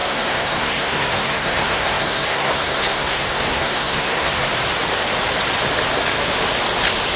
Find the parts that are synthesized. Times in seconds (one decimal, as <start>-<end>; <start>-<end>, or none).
0.0-4.3